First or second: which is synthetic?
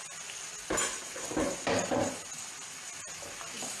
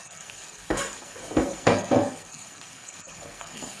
second